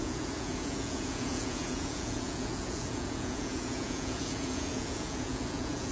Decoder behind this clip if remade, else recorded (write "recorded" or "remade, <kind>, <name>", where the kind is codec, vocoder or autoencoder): remade, vocoder, Vocos